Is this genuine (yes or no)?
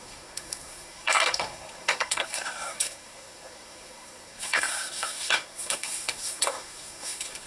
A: no